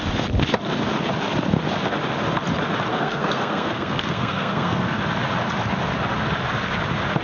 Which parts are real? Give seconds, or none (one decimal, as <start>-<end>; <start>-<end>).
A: 0.0-2.9; 5.0-7.2